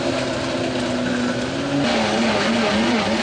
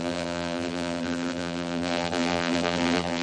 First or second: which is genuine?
first